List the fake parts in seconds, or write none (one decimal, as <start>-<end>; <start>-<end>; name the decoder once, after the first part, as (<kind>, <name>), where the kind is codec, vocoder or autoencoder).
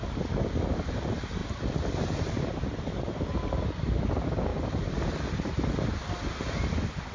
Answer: none